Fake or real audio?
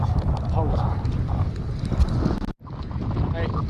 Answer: real